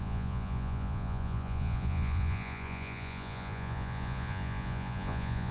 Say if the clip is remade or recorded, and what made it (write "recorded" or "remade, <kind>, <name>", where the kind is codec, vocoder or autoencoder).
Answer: remade, vocoder, Vocos